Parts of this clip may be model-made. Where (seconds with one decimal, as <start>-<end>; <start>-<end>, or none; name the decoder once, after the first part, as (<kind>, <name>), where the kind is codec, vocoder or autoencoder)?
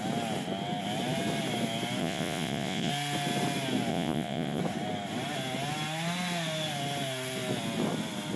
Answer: 2.0-2.9 (vocoder, Vocos); 3.9-4.6